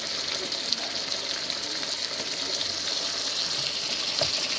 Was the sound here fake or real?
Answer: real